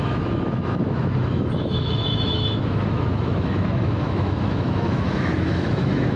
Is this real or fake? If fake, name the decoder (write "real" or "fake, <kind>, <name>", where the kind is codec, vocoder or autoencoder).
fake, autoencoder, DAC-VAE